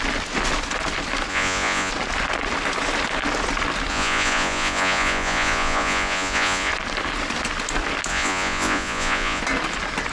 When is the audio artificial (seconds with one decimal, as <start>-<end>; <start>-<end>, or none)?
1.3-1.9; 3.9-6.7; 8.1-9.4